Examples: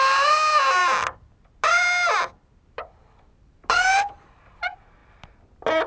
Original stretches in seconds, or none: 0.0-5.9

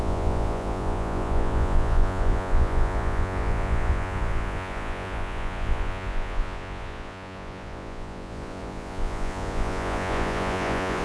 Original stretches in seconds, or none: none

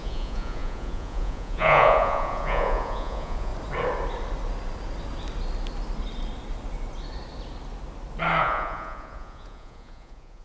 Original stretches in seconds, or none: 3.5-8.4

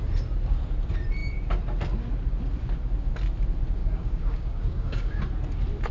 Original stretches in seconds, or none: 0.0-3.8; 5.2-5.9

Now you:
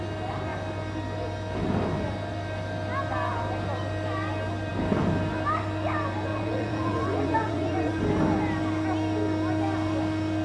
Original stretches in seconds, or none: 0.0-6.3; 8.0-10.4

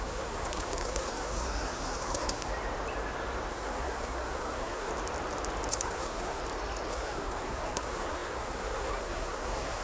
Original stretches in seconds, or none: 2.5-3.5; 4.9-5.7; 6.4-6.9